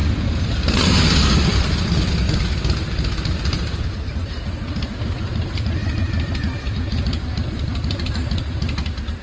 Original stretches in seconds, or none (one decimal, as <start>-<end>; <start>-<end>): 2.8-5.8; 8.4-9.2